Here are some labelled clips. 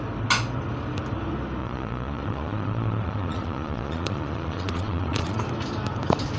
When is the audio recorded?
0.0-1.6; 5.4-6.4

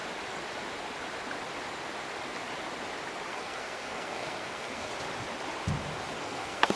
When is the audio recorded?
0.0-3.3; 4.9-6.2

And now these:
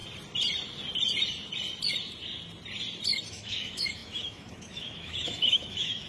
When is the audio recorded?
0.0-3.3

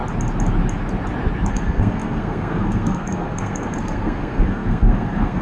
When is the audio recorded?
0.0-1.5

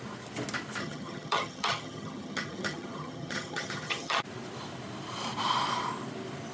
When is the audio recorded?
0.0-0.8; 4.2-6.5